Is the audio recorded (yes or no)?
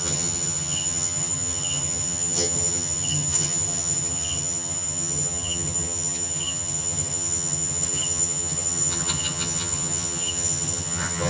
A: no